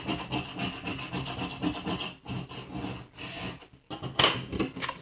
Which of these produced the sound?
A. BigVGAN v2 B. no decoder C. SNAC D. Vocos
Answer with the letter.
B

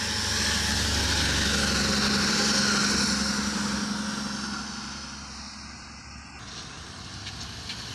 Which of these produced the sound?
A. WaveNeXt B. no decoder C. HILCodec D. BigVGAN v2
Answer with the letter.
B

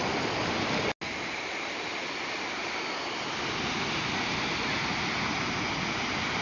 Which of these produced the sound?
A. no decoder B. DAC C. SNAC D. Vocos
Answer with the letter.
A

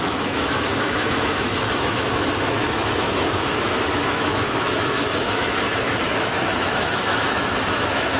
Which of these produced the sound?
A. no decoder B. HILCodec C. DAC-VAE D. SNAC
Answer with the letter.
C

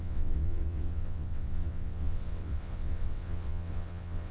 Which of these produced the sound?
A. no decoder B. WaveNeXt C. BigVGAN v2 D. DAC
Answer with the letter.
B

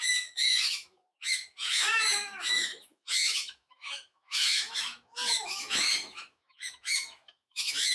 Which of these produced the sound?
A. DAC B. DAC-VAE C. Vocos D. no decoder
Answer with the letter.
B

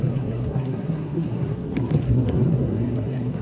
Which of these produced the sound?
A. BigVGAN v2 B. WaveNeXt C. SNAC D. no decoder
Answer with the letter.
C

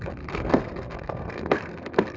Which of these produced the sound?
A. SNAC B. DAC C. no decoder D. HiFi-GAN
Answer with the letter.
A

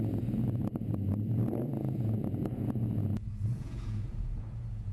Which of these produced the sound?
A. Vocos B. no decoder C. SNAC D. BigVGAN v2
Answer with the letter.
A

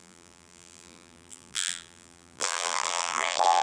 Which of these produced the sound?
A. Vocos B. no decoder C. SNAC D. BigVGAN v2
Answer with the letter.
D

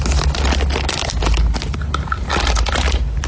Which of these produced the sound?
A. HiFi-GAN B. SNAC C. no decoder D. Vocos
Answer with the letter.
C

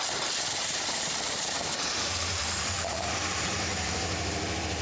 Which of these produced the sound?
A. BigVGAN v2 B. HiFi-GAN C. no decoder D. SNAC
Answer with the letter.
A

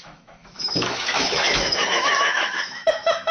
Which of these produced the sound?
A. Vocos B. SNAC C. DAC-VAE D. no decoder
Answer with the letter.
C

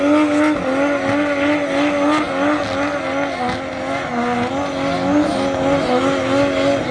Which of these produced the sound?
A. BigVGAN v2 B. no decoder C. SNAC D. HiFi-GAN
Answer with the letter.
B